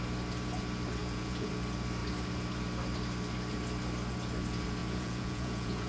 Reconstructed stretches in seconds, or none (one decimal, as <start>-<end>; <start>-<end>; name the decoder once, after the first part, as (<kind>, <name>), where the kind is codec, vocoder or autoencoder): 1.0-1.5 (vocoder, Vocos); 4.8-5.9